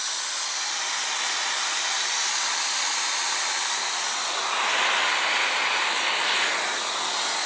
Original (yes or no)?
yes